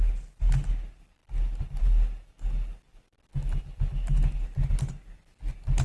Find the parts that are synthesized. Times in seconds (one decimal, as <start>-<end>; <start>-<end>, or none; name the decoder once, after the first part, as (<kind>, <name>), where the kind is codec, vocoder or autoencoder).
none